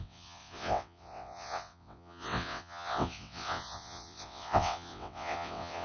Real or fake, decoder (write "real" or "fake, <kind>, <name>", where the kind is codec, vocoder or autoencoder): fake, vocoder, WaveNeXt